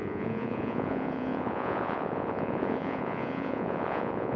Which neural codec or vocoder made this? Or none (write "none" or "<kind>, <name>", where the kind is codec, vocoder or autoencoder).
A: vocoder, Vocos